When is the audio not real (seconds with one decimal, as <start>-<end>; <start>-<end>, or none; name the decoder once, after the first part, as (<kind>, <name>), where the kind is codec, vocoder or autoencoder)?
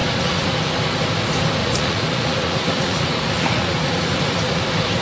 0.0-0.5 (vocoder, Vocos); 1.6-4.6